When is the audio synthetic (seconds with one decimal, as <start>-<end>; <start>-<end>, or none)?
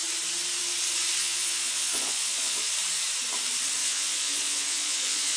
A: 1.2-2.7; 3.8-5.4